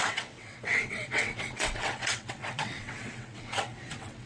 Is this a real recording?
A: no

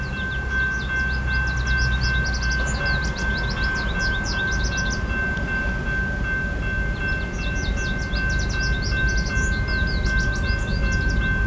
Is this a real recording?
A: yes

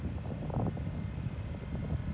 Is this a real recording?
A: yes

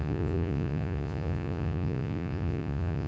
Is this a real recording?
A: no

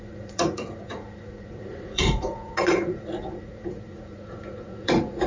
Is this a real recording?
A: no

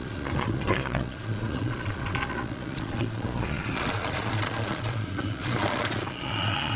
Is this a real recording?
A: no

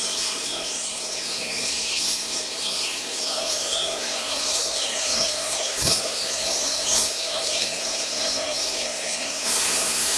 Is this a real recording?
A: no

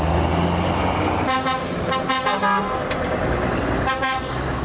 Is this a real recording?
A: yes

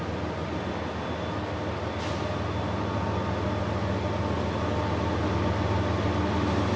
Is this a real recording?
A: yes